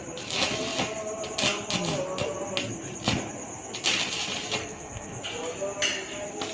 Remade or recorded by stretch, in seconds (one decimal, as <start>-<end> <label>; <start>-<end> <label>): 0.0-4.6 recorded; 4.6-5.2 remade; 5.2-6.5 recorded